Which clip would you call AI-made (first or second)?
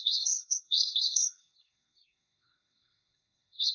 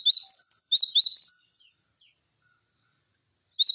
first